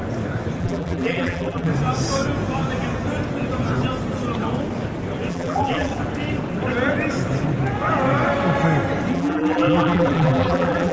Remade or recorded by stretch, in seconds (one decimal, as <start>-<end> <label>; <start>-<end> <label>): 0.0-0.6 recorded; 0.6-1.7 remade; 1.7-5.3 recorded; 5.3-5.9 remade; 5.9-9.1 recorded; 9.1-10.9 remade